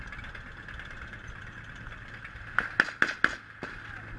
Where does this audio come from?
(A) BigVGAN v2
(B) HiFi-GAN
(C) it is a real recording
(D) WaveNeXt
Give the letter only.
C